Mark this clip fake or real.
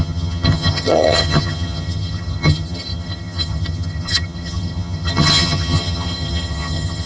fake